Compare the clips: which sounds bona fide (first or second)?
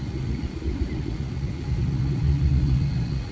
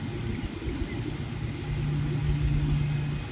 second